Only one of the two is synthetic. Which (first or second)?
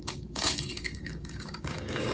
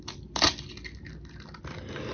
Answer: first